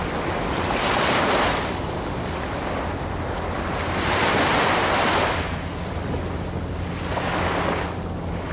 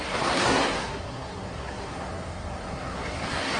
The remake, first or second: second